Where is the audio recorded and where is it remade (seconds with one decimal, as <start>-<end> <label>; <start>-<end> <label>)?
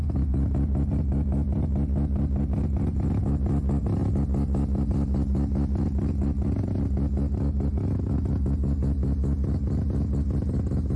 0.0-11.0 recorded